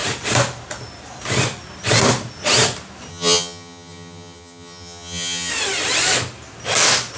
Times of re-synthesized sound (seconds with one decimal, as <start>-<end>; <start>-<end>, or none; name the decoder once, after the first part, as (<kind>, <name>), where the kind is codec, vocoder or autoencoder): 3.1-5.5 (vocoder, HiFi-GAN)